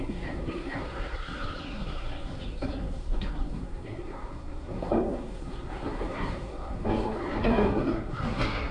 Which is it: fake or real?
fake